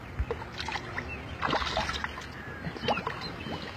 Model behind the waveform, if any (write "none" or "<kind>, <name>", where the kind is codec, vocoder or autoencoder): none